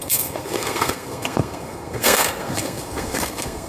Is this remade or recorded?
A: remade